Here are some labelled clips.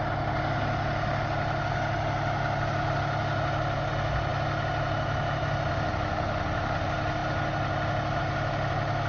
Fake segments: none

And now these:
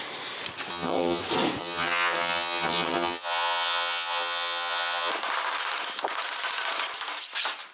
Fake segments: 0.7-1.2 (vocoder, HiFi-GAN); 1.6-5.1

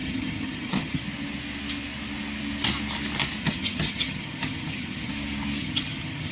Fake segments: 0.0-1.0 (vocoder, HiFi-GAN); 3.4-5.1; 5.6-6.3

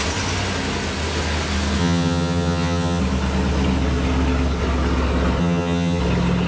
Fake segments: 1.8-3.0 (vocoder, HiFi-GAN); 5.4-6.0

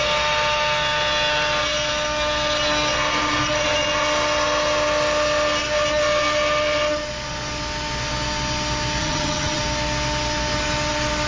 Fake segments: 9.0-9.6 (vocoder, HiFi-GAN)